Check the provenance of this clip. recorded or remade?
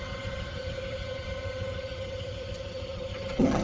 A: remade